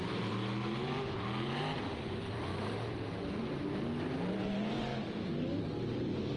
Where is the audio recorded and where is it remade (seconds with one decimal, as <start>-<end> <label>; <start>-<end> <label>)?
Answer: 0.0-6.4 recorded